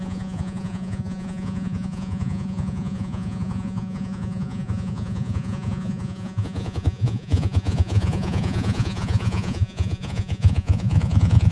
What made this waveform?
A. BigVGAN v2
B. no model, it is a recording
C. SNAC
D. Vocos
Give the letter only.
D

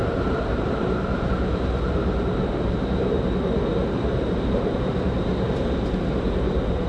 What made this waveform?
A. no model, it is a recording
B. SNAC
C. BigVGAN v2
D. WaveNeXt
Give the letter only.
C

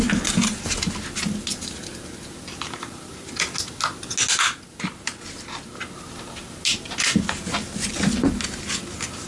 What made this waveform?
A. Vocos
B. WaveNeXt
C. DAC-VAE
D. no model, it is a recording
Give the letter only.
D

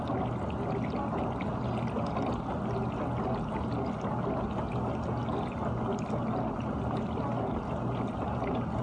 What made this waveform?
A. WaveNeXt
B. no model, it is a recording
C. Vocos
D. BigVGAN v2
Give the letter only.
B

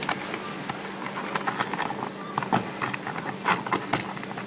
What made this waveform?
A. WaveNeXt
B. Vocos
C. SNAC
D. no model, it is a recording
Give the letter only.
D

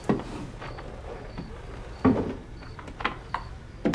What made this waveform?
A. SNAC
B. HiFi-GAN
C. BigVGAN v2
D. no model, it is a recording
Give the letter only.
D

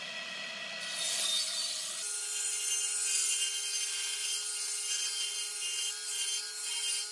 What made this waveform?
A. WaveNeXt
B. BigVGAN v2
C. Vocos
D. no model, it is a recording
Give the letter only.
D